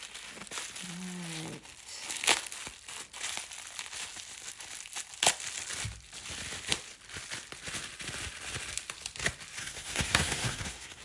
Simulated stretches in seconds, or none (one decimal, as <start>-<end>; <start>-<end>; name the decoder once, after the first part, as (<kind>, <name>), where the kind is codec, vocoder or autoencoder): 9.6-11.0 (codec, SNAC)